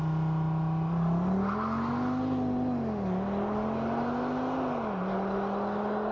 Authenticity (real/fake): real